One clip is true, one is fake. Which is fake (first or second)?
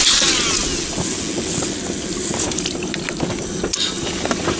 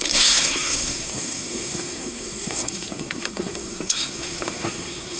second